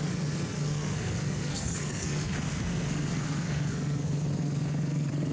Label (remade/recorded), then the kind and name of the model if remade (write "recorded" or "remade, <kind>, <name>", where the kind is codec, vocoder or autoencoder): remade, codec, SNAC